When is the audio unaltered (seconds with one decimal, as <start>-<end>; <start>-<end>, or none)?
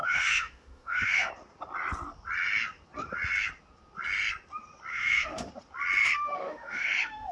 1.3-4.9; 5.5-6.0